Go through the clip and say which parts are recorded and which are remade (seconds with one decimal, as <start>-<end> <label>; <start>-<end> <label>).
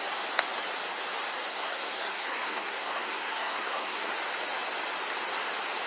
0.0-1.5 recorded; 1.5-4.1 remade; 4.1-5.9 recorded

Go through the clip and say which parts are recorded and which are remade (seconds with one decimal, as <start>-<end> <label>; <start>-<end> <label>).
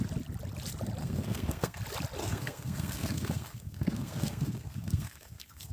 0.0-1.0 recorded; 1.0-1.8 remade; 1.8-2.2 recorded; 2.2-5.7 remade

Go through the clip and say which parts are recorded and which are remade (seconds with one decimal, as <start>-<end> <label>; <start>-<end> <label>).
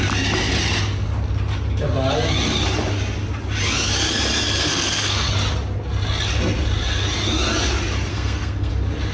0.0-4.6 recorded; 4.6-5.3 remade; 5.3-8.1 recorded; 8.1-8.7 remade; 8.7-9.1 recorded